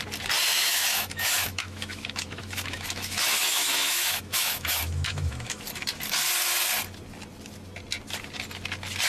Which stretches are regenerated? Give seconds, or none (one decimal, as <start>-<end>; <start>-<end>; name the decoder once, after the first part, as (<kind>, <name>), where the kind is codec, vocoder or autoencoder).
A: 0.5-5.6 (autoencoder, DAC-VAE)

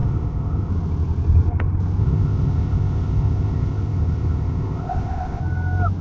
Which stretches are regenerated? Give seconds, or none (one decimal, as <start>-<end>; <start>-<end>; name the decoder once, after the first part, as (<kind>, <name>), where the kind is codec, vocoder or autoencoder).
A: 0.0-0.7 (codec, ZipCodec); 2.0-5.4

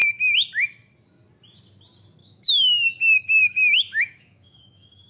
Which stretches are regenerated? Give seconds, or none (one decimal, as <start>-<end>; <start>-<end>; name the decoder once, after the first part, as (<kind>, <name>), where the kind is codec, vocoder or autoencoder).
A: 2.2-5.1 (autoencoder, DAC-VAE)

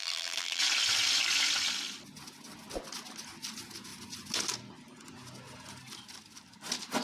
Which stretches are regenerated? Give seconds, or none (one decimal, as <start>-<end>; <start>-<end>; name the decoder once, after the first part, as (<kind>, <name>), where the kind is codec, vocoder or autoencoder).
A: 0.0-0.6 (vocoder, BigVGAN v2)